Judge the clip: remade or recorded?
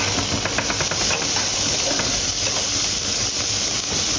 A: recorded